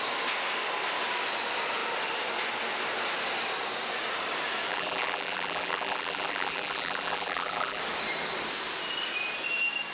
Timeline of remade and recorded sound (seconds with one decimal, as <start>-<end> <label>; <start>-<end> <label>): 0.0-4.7 recorded; 4.7-7.8 remade; 7.8-9.9 recorded

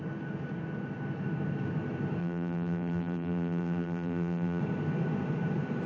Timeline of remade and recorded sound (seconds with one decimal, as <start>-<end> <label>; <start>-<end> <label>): 0.0-2.2 recorded; 2.2-4.6 remade; 4.6-5.9 recorded

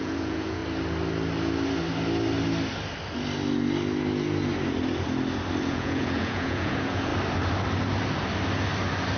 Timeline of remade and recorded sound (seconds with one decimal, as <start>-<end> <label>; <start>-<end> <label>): 0.0-0.6 remade; 0.6-5.6 recorded; 5.6-7.1 remade; 7.1-9.2 recorded

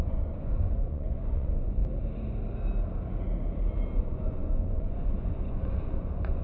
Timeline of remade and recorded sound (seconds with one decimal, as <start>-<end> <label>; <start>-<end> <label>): 0.0-1.8 remade; 1.8-4.0 recorded; 4.0-6.4 remade